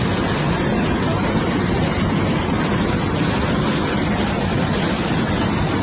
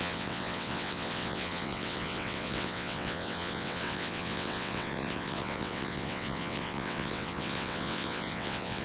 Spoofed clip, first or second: second